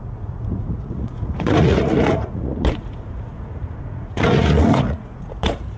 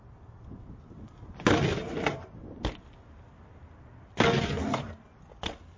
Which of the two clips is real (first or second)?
second